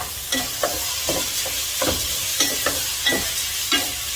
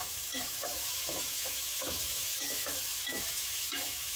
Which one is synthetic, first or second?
second